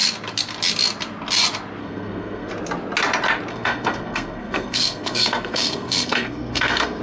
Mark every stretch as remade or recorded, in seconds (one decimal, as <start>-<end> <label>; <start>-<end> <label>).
0.0-1.8 recorded; 1.8-2.5 remade; 2.5-3.5 recorded; 3.5-7.0 remade